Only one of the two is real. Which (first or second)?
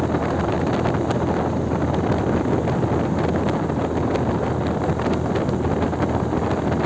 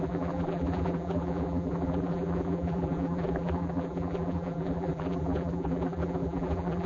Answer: first